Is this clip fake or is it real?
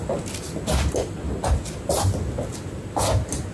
real